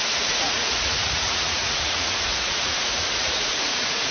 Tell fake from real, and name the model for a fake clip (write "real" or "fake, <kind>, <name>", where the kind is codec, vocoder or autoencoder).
fake, vocoder, Vocos